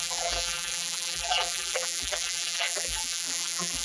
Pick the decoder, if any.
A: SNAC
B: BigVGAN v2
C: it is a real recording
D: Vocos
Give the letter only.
B